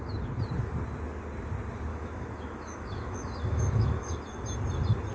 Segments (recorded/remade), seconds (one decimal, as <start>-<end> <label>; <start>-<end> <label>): 0.0-1.9 recorded; 1.9-4.2 remade; 4.2-5.1 recorded